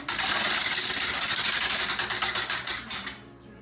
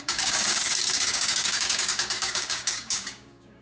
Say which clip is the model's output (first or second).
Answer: second